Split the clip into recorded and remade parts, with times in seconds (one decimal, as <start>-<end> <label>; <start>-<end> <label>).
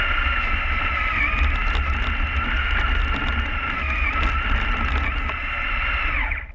0.0-6.5 recorded